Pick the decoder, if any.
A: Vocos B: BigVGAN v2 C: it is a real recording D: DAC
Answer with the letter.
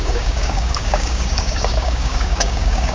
D